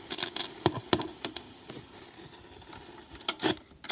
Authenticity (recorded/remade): recorded